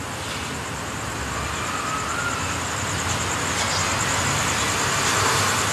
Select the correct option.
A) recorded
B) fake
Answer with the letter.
A